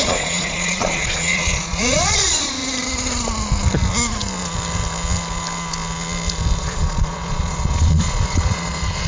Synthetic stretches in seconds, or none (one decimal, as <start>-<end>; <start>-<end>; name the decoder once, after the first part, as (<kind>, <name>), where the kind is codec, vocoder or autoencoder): 0.0-2.6 (vocoder, Vocos); 6.6-9.1